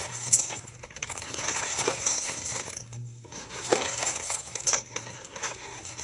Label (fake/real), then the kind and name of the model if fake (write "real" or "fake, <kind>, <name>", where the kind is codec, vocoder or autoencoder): fake, codec, SNAC